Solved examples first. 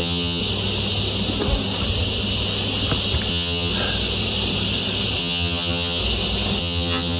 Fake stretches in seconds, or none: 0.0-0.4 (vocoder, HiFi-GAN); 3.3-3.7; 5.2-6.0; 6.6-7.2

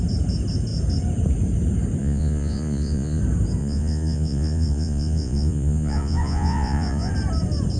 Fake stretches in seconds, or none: 2.0-3.2 (vocoder, Vocos); 3.6-7.1

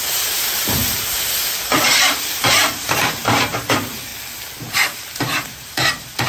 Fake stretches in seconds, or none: 0.0-0.8 (vocoder, BigVGAN v2); 1.6-4.1; 4.7-6.3